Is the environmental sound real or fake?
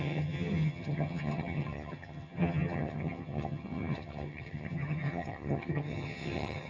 fake